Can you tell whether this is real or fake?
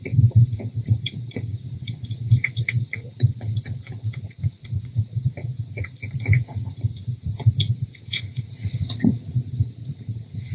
fake